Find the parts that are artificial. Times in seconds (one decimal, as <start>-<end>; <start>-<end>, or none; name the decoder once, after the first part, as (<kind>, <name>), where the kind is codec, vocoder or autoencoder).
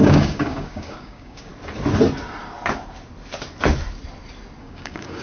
0.0-1.5 (codec, DAC); 4.6-5.2